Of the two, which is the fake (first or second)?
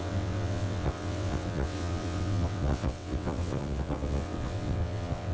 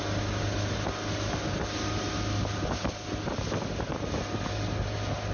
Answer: first